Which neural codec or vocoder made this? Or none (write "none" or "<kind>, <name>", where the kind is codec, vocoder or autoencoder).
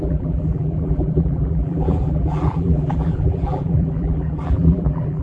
vocoder, BigVGAN v2